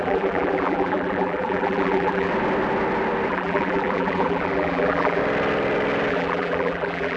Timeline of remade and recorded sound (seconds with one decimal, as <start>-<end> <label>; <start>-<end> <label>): 0.0-2.3 remade; 2.3-3.3 recorded; 3.3-5.2 remade; 5.2-6.1 recorded; 6.1-7.2 remade